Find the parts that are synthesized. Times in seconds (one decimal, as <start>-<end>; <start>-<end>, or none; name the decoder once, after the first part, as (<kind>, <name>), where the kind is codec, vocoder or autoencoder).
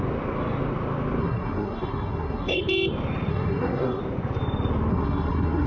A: 1.2-2.6 (codec, SNAC); 3.3-4.0; 4.9-5.7